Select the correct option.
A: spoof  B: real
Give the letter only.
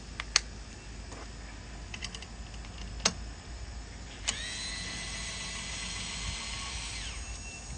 B